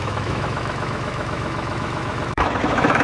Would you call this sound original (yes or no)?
no